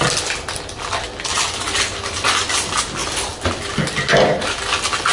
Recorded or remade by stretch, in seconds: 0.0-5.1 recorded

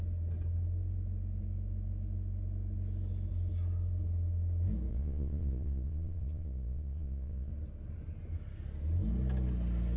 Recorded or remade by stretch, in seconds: 0.0-4.9 recorded; 4.9-7.5 remade; 7.5-10.0 recorded

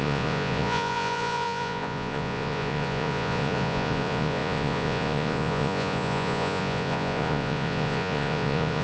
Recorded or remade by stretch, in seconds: 0.0-8.8 remade

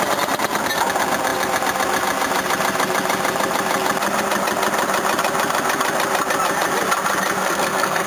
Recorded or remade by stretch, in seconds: 0.0-7.4 recorded; 7.4-8.1 remade